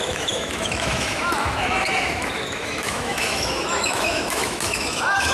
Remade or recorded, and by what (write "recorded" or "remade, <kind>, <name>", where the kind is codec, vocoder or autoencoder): remade, autoencoder, DAC-VAE